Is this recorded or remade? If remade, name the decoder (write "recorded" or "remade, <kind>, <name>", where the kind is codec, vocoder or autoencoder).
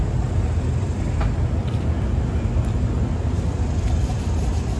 recorded